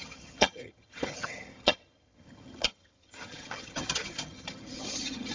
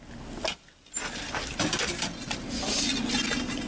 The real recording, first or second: second